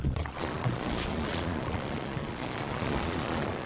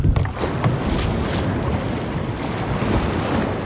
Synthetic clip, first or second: first